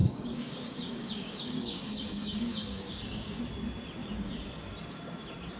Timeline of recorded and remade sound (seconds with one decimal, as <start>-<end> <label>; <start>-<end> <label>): 0.0-3.4 remade; 3.4-4.0 recorded; 4.0-4.5 remade; 4.5-5.6 recorded